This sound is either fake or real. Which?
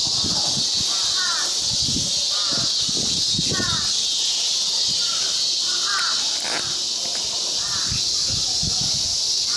real